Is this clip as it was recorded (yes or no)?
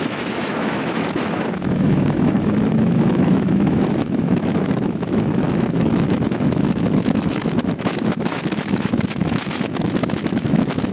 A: no